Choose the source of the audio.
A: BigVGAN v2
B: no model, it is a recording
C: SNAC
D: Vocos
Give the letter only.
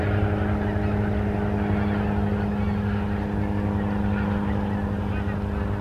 B